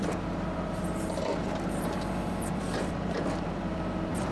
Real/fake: fake